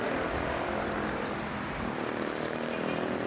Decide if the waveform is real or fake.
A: fake